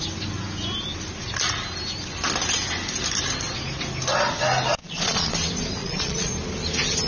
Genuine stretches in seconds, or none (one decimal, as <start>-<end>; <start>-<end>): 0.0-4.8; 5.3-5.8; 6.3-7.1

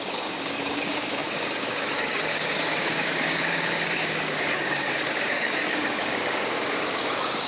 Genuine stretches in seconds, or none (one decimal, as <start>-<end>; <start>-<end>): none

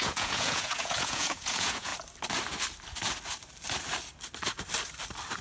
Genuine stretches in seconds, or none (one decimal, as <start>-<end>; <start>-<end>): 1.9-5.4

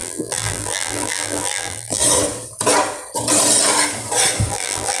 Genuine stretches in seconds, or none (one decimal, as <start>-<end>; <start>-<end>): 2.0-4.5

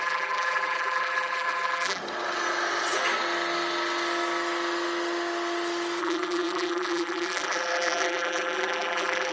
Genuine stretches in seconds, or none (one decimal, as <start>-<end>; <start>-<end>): 2.0-6.0

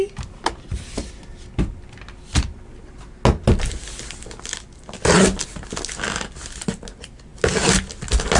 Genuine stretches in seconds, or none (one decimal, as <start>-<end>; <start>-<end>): 0.0-8.4